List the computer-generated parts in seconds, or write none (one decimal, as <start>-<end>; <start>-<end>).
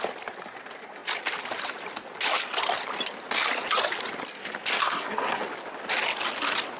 4.8-5.4